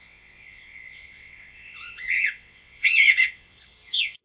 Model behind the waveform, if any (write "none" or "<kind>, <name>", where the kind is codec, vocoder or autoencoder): vocoder, WaveNeXt